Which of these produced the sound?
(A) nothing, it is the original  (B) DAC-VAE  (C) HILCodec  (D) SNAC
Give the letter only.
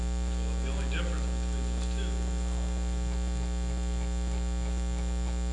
A